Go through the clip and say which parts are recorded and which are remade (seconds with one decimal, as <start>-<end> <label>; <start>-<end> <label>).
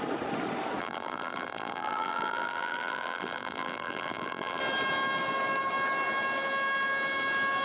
0.0-0.8 recorded; 0.8-4.6 remade; 4.6-7.6 recorded